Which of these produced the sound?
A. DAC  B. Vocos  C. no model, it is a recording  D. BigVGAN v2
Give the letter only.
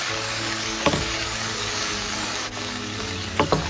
A